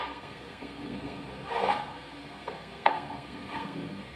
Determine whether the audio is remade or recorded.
remade